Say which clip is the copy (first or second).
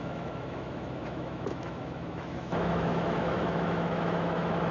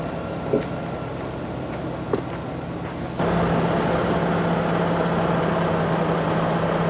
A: first